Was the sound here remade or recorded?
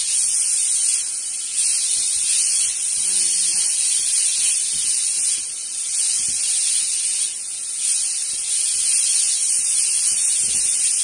recorded